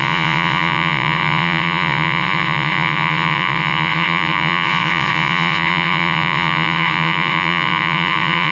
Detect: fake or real fake